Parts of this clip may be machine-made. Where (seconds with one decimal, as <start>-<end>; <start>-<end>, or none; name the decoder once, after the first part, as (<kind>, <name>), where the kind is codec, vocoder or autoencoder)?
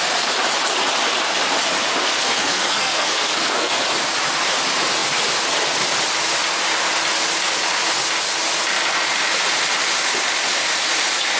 2.1-3.8 (codec, SNAC)